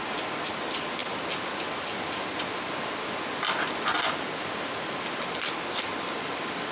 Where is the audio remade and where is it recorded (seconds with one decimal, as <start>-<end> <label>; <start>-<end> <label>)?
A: 0.0-6.7 recorded